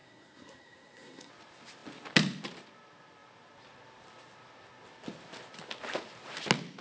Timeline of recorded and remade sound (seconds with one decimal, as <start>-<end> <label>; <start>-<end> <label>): 0.0-1.3 remade; 1.3-6.8 recorded